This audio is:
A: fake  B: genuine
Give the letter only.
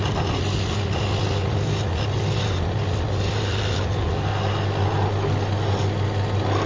B